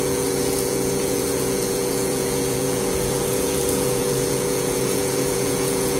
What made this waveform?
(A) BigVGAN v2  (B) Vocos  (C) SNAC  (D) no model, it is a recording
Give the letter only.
B